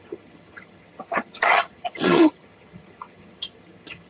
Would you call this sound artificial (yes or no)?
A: yes